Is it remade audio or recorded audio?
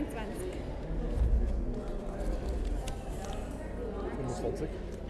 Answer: recorded